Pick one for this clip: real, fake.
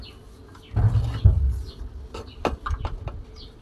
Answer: real